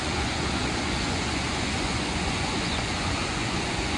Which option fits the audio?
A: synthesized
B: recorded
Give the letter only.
A